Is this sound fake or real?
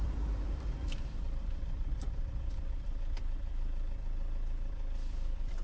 fake